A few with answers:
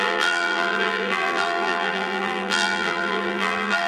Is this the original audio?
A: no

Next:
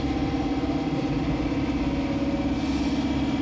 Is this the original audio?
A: yes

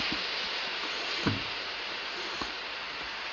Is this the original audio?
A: yes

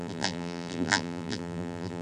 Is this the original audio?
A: no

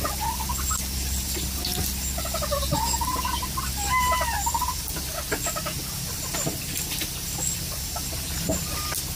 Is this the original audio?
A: no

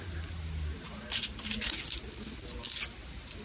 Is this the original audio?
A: yes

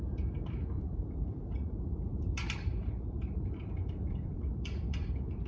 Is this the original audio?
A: no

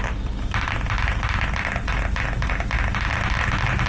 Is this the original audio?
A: yes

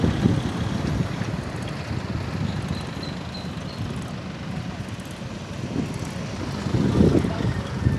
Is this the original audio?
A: yes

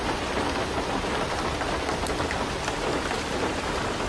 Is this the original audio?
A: yes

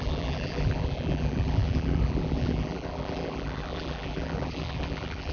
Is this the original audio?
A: no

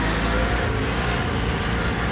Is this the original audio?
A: yes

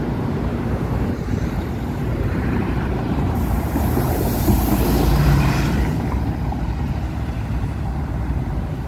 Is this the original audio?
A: no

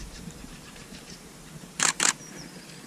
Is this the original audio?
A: no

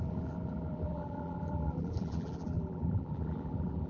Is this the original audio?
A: no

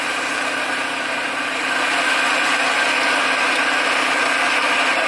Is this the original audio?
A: yes